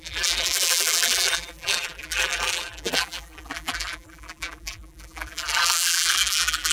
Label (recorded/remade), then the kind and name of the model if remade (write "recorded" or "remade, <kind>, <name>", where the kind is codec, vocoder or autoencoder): remade, vocoder, BigVGAN v2